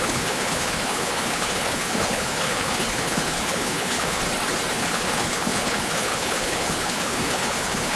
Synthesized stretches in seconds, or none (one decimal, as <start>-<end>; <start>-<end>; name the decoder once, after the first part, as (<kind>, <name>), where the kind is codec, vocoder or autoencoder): 0.0-4.2 (codec, HILCodec); 4.7-8.0